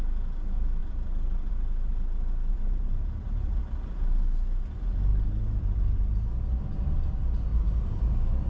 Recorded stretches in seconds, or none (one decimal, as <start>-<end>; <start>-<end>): 0.0-0.8; 1.5-2.5; 3.6-5.1; 6.6-7.5; 8.0-8.5